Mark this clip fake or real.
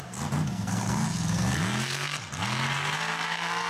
fake